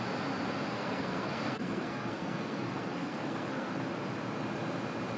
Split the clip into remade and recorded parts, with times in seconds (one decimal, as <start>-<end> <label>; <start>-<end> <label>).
0.0-0.7 recorded; 0.7-3.8 remade; 3.8-5.2 recorded